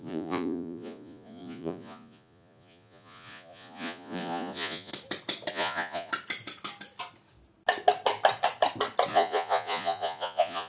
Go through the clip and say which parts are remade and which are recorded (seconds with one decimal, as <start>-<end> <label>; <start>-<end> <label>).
0.0-4.9 remade; 4.9-5.5 recorded; 5.5-6.1 remade; 6.1-9.1 recorded; 9.1-10.7 remade